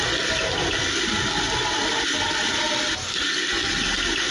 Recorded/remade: recorded